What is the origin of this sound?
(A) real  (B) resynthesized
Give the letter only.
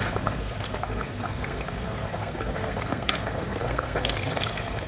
B